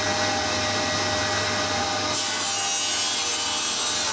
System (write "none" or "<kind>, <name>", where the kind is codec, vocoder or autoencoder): none